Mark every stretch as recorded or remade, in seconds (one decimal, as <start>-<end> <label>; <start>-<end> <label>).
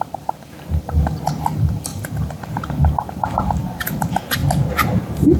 0.0-4.4 remade; 4.4-5.0 recorded; 5.0-5.4 remade